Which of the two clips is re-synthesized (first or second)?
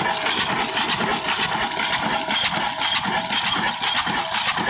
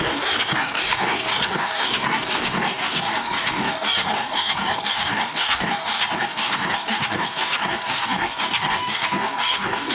second